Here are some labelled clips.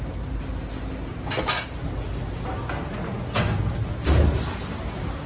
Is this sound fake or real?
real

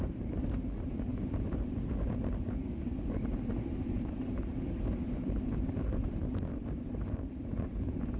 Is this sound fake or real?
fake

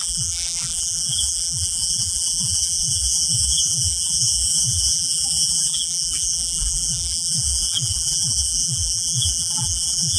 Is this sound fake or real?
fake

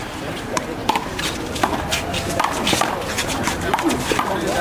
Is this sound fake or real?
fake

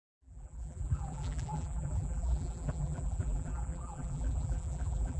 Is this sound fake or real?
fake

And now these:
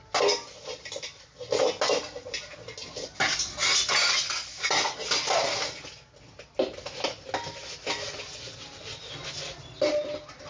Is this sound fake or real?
real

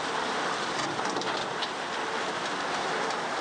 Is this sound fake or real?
real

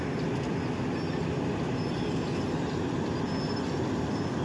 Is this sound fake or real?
real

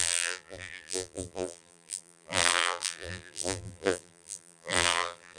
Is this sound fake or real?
fake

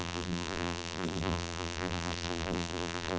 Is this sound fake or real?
fake